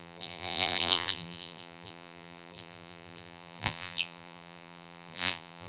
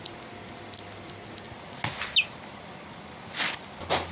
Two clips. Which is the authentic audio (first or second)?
second